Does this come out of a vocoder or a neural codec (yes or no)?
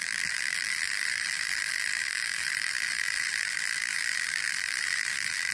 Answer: yes